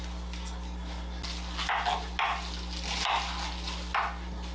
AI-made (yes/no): no